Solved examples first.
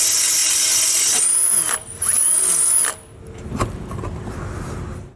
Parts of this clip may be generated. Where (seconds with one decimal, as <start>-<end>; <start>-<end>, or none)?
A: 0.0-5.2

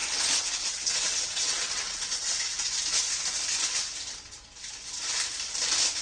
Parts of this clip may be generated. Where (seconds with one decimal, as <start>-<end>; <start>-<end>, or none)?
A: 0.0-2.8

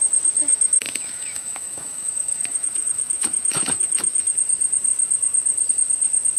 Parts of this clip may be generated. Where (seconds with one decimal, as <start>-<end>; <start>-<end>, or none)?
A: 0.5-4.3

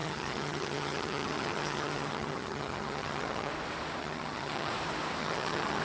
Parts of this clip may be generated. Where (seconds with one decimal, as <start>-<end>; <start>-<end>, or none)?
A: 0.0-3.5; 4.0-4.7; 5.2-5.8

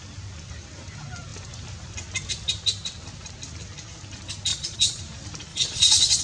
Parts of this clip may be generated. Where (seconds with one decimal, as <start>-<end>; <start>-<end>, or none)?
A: 4.5-5.0; 5.5-6.2